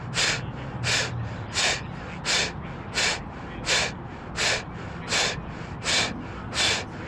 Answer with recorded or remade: recorded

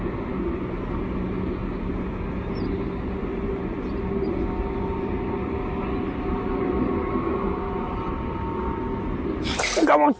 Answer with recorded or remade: recorded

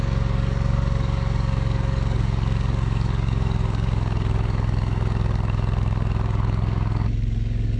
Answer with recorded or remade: remade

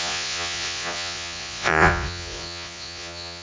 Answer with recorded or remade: remade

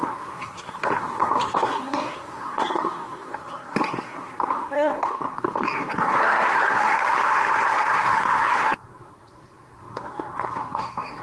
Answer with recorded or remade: remade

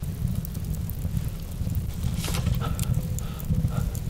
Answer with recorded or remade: recorded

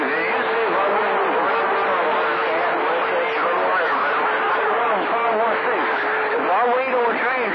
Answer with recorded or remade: recorded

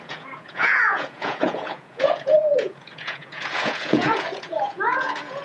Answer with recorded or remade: remade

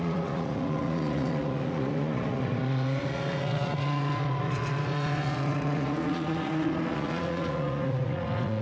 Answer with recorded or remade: remade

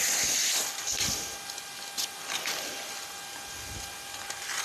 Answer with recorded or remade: recorded